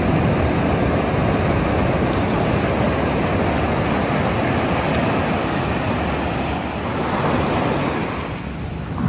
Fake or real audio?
real